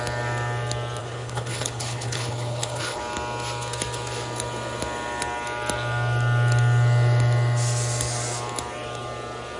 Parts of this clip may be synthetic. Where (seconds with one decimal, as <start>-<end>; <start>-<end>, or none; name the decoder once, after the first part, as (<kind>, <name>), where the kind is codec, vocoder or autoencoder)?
1.0-3.0 (codec, HILCodec)